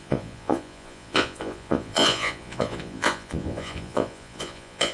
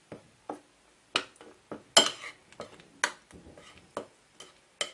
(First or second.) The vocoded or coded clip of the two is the first